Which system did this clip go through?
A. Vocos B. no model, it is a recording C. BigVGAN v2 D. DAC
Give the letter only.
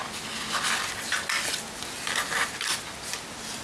B